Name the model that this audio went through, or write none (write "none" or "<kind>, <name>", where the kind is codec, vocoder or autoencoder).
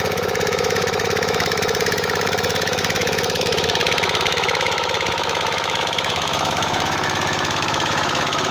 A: autoencoder, DAC-VAE